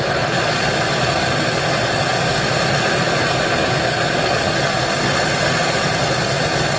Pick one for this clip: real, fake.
real